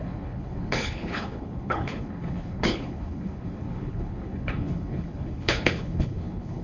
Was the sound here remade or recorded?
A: remade